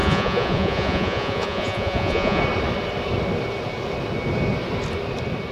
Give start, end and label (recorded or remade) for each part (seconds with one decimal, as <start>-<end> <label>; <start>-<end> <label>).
0.0-2.4 remade; 2.4-5.5 recorded